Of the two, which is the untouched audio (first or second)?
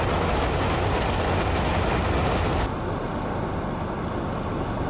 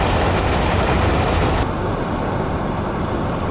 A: first